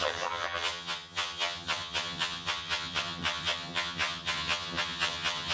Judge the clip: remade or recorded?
remade